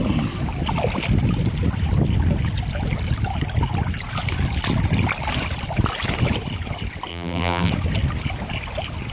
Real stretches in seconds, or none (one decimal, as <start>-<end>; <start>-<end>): 0.0-7.1; 7.7-9.1